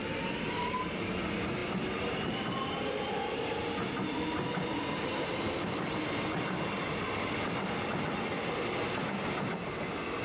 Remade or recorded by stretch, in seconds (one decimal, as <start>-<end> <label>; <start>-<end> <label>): 0.0-10.2 recorded

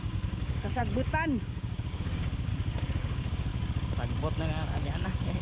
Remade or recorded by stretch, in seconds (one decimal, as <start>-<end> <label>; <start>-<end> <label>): 0.0-0.8 remade; 0.8-1.4 recorded; 1.4-2.5 remade; 2.5-3.0 recorded; 3.0-3.5 remade; 3.5-4.5 recorded; 4.5-5.4 remade

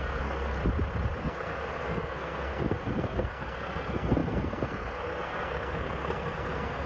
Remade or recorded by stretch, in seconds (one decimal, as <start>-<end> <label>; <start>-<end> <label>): 0.0-0.6 remade; 0.6-1.2 recorded; 1.2-6.9 remade

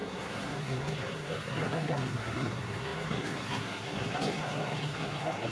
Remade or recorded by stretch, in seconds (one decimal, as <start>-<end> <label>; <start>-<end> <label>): 0.0-5.5 remade

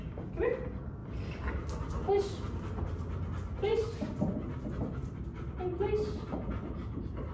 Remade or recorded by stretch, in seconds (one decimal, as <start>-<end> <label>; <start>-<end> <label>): 0.0-7.3 recorded